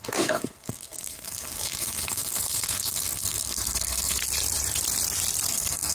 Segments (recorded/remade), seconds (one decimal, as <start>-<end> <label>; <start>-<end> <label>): 0.0-4.2 remade; 4.2-5.5 recorded; 5.5-5.9 remade